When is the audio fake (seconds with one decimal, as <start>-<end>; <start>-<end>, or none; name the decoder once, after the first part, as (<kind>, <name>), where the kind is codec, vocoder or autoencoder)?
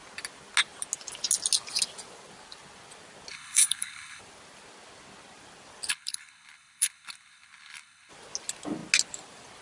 3.3-4.2 (codec, HILCodec); 5.9-8.1